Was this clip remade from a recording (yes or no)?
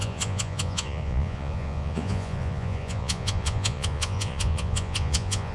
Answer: yes